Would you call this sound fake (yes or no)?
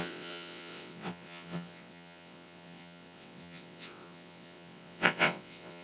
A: yes